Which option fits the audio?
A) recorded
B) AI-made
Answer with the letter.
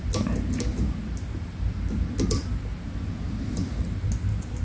A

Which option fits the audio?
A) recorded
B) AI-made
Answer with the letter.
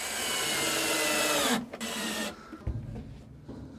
A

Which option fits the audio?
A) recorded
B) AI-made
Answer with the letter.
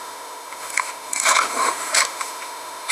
B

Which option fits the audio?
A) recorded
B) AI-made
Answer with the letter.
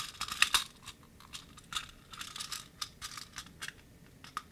A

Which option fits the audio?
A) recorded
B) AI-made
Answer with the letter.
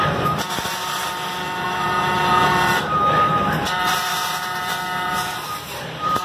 B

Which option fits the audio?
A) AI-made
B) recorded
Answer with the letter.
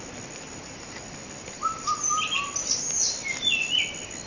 B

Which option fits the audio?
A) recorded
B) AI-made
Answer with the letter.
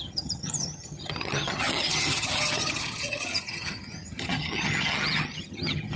B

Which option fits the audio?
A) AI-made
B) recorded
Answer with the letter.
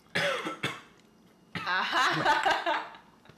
B